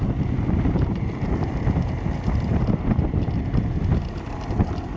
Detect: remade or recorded recorded